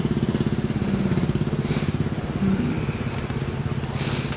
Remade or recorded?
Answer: recorded